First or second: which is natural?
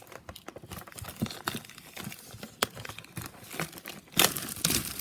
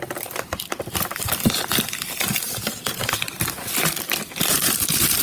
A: first